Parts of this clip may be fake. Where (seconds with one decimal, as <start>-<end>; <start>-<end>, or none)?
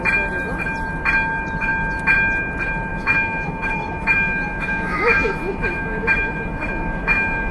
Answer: 2.9-7.5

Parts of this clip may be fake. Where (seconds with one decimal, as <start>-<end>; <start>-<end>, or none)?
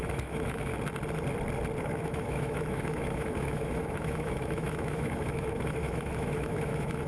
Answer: 0.0-0.7; 1.8-7.1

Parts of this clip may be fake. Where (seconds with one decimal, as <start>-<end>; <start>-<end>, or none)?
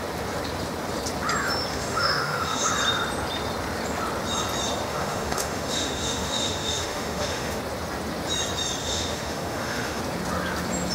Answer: 1.7-2.7; 4.9-7.6; 8.8-10.0